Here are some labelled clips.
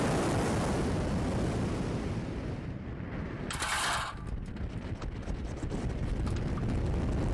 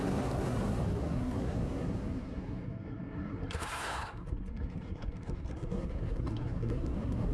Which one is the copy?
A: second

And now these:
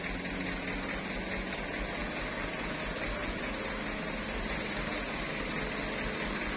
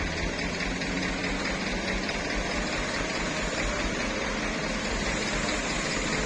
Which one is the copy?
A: second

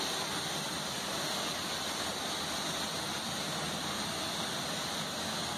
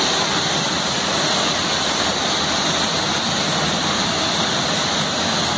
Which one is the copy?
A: second